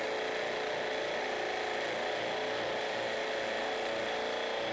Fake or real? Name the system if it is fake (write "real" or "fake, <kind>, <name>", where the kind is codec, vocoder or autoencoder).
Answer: real